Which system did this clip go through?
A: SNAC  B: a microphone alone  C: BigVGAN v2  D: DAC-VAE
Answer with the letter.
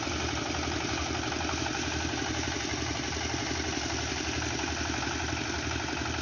B